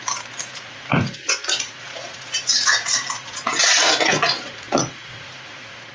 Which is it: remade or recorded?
remade